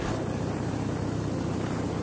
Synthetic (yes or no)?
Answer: no